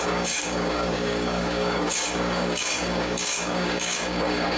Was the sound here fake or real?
fake